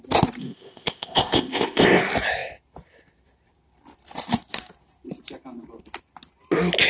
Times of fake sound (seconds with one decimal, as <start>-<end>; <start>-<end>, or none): 0.4-2.0